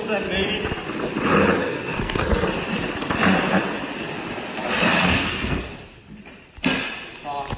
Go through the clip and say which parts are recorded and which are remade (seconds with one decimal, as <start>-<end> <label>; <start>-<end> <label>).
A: 0.0-1.6 recorded; 1.6-2.3 remade; 2.3-4.9 recorded; 4.9-5.7 remade; 5.7-7.6 recorded